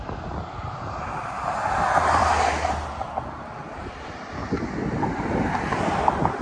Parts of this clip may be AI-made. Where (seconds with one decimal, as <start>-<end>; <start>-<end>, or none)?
none